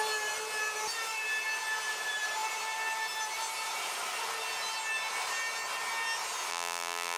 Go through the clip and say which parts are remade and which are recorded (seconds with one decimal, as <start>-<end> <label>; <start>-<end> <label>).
0.0-6.5 recorded; 6.5-7.2 remade